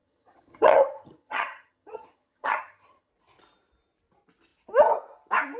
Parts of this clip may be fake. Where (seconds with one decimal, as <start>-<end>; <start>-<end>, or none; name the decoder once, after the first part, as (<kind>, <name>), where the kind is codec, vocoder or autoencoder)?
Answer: 0.0-3.1 (vocoder, HiFi-GAN)